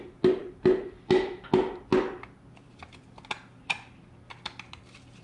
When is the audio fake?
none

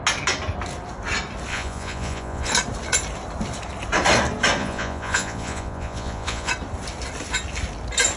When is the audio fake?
1.5-2.5 (vocoder, Vocos); 4.6-6.5

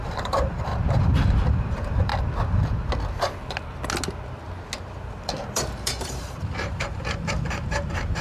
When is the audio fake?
0.0-0.7 (vocoder, BigVGAN v2); 1.5-2.1; 5.0-8.2

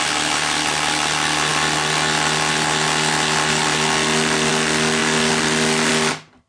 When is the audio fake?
none

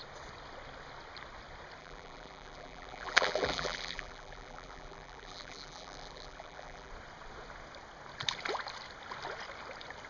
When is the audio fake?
1.8-6.9 (vocoder, BigVGAN v2)

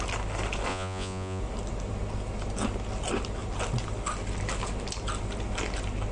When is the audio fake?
0.7-1.4 (vocoder, Vocos)

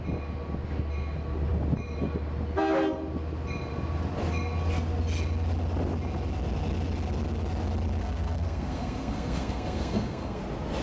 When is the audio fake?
8.0-10.4 (codec, SNAC)